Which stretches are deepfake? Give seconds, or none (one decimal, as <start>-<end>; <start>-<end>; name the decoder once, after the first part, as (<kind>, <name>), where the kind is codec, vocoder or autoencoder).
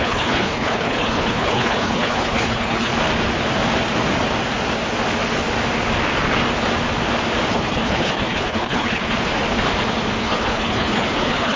0.0-2.9 (codec, HILCodec); 7.5-9.3; 10.2-11.6